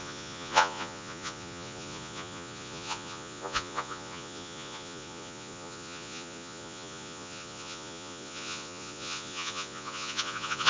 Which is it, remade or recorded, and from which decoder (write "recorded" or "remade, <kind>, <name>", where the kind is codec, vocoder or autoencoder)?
remade, vocoder, Vocos